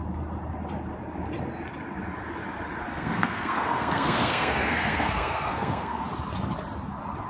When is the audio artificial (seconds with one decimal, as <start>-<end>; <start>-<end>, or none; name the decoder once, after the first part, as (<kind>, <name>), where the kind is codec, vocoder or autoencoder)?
2.9-6.0 (codec, SNAC)